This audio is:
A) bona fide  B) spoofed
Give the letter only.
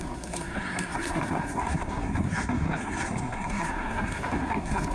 B